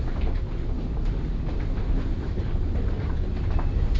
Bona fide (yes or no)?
yes